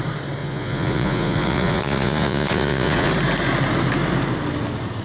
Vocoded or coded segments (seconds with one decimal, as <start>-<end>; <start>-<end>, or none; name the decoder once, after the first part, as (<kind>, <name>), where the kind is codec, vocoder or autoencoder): 0.4-3.1 (vocoder, Vocos)